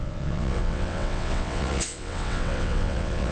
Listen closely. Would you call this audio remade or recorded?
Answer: remade